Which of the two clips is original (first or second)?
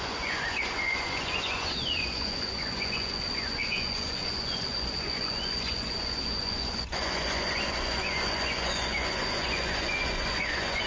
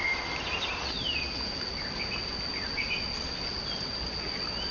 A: second